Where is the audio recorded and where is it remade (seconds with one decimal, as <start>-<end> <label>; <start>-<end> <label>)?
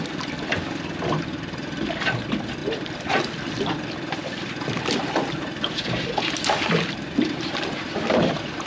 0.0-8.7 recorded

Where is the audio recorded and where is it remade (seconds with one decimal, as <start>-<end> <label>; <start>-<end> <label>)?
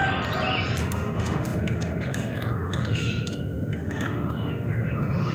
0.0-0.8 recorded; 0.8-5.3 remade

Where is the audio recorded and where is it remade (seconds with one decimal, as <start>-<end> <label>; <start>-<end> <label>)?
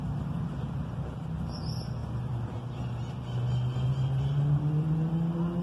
0.0-5.6 recorded